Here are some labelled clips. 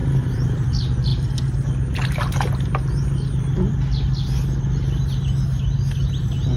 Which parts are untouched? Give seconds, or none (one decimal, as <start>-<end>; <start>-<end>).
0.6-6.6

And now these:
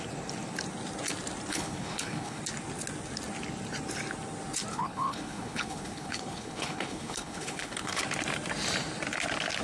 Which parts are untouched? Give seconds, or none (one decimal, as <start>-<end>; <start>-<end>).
0.0-1.5; 2.4-4.7; 8.0-9.6

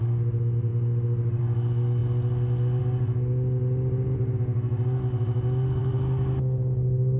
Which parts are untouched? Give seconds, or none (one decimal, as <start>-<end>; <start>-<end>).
0.0-7.2